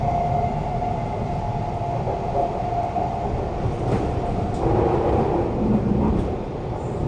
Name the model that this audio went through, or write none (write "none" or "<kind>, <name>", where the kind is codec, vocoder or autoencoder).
none